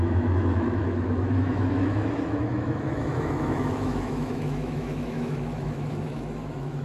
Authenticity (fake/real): fake